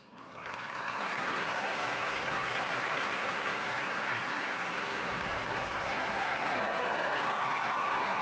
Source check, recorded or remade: remade